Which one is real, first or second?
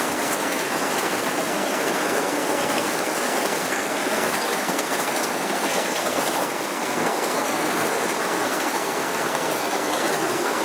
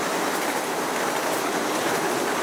second